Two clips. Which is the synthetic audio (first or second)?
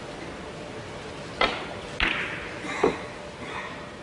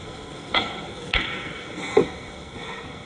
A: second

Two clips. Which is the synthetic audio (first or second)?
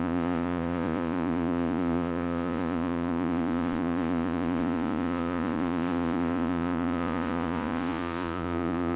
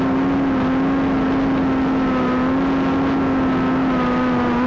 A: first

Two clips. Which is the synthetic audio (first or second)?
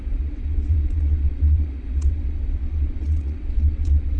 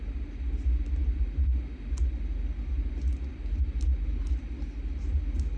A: first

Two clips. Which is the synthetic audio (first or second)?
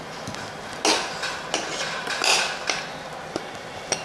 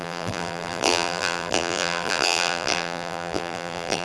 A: second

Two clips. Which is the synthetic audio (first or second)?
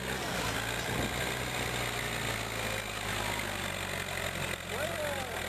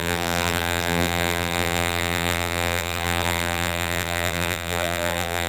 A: second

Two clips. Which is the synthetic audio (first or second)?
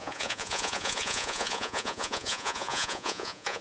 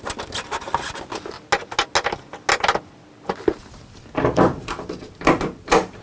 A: first